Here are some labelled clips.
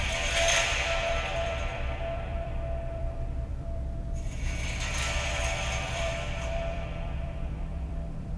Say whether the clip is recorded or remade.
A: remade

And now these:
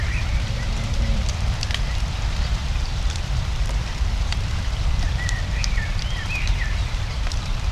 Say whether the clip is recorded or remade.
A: remade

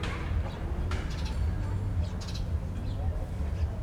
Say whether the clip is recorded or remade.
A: recorded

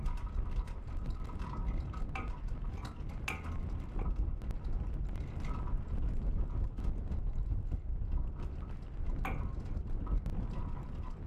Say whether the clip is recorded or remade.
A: recorded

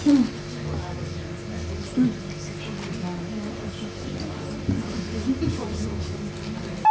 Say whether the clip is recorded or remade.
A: recorded